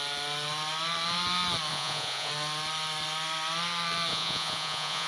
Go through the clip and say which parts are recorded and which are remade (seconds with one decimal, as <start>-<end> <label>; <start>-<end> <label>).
0.0-1.7 recorded; 1.7-2.3 remade; 2.3-4.1 recorded; 4.1-5.1 remade